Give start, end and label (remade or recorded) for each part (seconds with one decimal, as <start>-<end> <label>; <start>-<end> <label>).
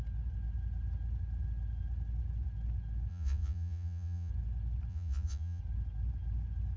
0.0-3.1 recorded; 3.1-4.3 remade; 4.3-4.9 recorded; 4.9-5.6 remade; 5.6-6.8 recorded